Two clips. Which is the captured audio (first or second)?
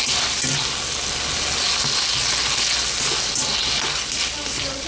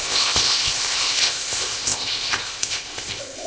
first